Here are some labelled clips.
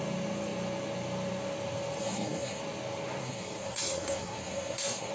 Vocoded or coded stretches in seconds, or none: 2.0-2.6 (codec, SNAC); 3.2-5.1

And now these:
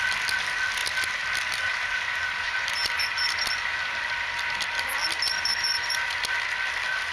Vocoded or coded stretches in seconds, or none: none

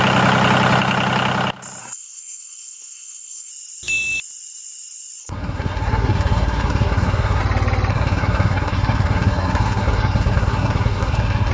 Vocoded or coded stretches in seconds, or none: 1.8-3.5 (codec, SNAC); 5.2-7.4; 7.9-11.5